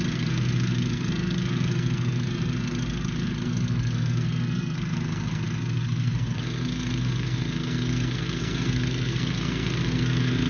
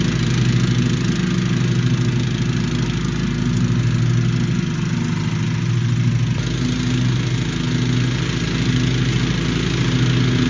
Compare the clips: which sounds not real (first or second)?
first